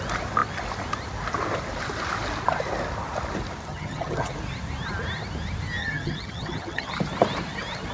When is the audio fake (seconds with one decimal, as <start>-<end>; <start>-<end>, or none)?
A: 3.7-4.3; 5.8-6.9